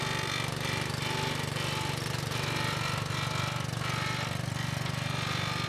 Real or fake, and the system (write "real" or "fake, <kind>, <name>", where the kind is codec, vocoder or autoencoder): real